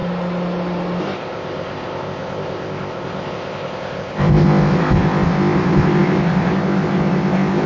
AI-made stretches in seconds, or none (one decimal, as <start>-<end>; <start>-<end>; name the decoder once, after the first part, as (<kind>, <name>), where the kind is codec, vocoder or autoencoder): 1.0-7.7 (codec, ZipCodec)